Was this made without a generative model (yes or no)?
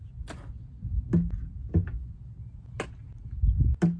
yes